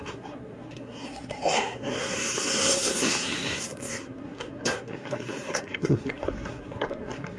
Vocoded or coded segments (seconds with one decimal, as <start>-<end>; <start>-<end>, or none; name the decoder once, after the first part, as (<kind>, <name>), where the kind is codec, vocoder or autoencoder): 0.0-7.4 (codec, SNAC)